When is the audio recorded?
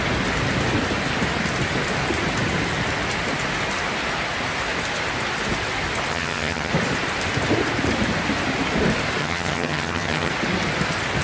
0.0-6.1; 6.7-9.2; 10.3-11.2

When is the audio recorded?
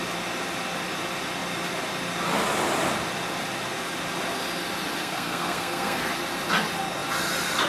0.0-5.0; 6.1-7.7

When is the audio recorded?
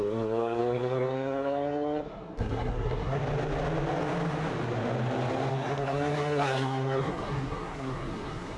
3.2-5.5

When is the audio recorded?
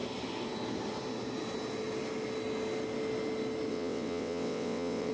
0.0-3.7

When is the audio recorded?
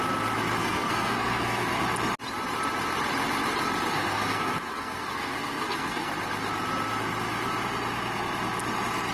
0.0-0.6; 1.8-3.9; 6.1-9.1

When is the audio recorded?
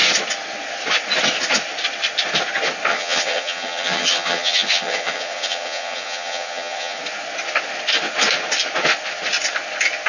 0.0-2.9; 7.0-10.1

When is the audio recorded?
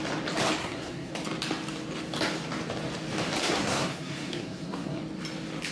0.0-0.6; 1.1-3.4; 5.0-5.7